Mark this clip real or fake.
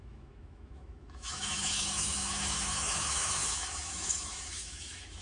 fake